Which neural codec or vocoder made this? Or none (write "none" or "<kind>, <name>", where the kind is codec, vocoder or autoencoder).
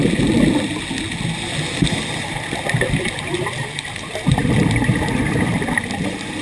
none